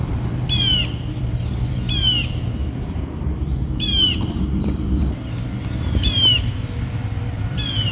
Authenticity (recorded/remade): remade